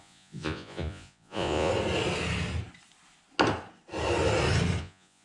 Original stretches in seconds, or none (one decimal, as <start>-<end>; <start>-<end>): 1.7-4.8